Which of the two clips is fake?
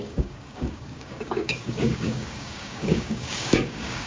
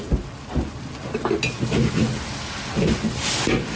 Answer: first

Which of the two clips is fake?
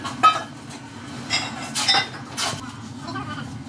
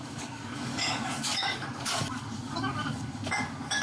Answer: second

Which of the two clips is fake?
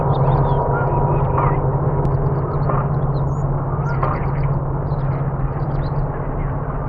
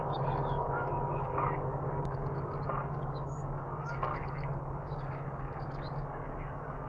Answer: second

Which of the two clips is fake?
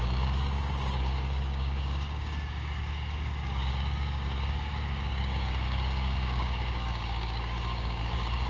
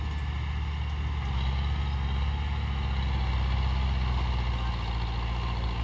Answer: first